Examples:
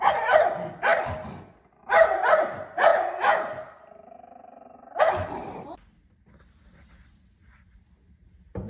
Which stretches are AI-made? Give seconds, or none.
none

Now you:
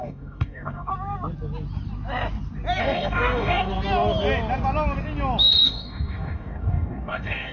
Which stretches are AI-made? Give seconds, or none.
0.0-0.9; 2.8-3.7; 5.5-7.5

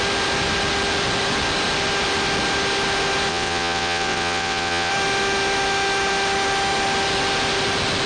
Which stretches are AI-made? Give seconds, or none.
3.3-4.9

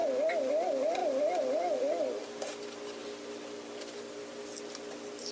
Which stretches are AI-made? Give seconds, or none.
1.0-1.8

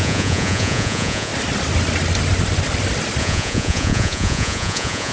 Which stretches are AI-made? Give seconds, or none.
0.0-1.3; 3.2-5.1

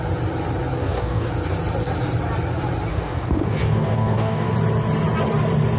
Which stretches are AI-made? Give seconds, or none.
0.8-1.3; 2.9-4.5

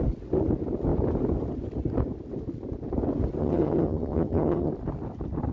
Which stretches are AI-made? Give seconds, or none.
3.4-4.7

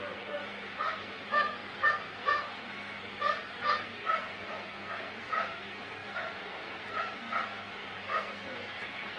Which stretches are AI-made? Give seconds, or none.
0.0-9.2